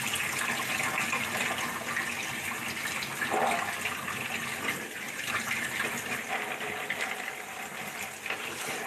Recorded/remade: recorded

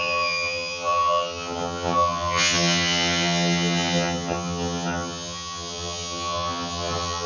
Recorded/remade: remade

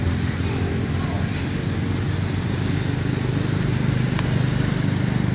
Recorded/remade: recorded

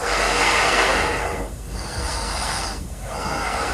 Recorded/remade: remade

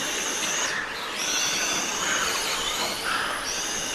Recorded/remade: recorded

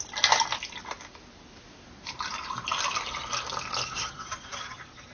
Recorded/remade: recorded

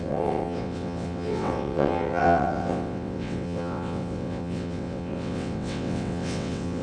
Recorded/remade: remade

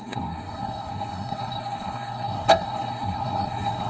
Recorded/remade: remade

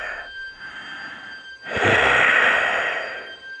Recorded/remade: recorded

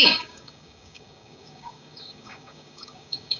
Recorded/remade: remade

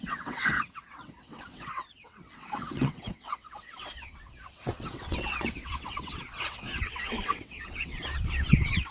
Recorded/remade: remade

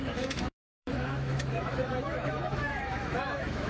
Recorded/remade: remade